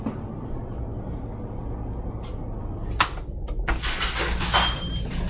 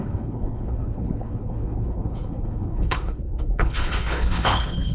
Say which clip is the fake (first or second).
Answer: second